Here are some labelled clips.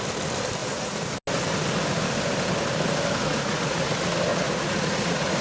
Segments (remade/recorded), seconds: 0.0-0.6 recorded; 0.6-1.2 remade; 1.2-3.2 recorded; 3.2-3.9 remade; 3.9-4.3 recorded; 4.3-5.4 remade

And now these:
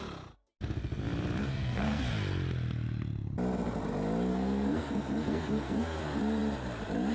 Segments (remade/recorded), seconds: 0.0-1.4 recorded; 1.4-2.0 remade; 2.0-4.3 recorded; 4.3-6.0 remade; 6.0-7.1 recorded

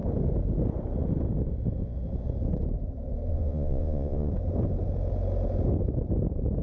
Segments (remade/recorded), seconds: 0.0-3.3 recorded; 3.3-4.3 remade; 4.3-6.6 recorded